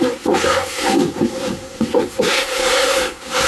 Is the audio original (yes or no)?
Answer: no